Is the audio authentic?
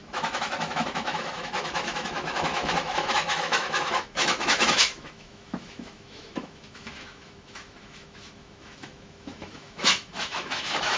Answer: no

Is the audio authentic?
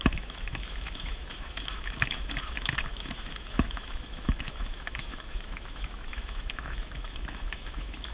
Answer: no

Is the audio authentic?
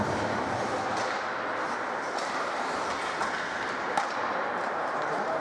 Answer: yes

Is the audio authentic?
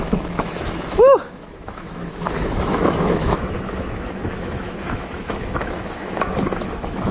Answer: no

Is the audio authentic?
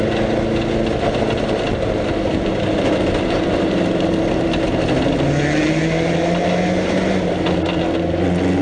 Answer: yes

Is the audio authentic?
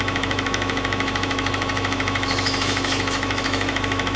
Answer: no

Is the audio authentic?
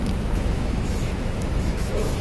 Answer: no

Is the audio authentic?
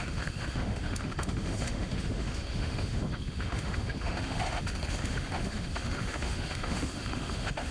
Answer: no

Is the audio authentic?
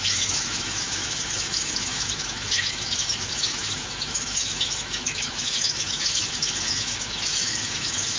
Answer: no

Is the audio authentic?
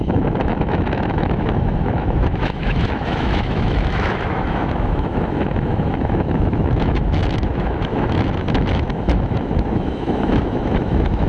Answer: no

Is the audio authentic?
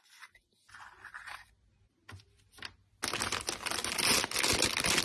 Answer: yes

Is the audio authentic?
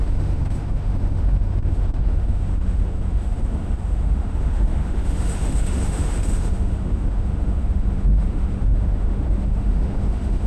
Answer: no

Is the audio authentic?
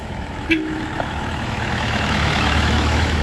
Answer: no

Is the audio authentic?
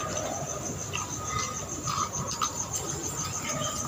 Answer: yes